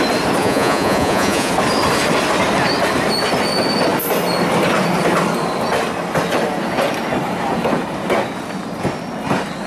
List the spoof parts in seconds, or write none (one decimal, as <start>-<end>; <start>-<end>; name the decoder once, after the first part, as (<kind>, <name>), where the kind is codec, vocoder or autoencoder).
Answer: 0.4-1.5 (vocoder, Vocos)